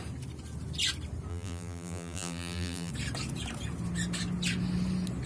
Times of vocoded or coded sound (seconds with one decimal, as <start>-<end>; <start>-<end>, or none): 1.3-2.9